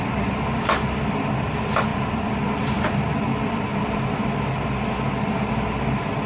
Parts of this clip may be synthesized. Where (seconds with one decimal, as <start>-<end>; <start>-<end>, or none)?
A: none